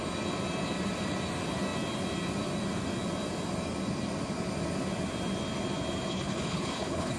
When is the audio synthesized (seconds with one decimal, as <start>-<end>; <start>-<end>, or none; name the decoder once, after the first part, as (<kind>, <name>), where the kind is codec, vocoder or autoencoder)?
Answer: 6.1-7.2 (codec, HILCodec)